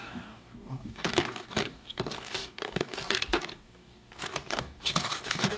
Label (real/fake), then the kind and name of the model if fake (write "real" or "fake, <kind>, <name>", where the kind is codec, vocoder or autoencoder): fake, codec, DAC